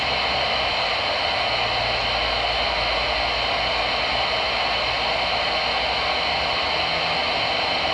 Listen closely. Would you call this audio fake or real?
real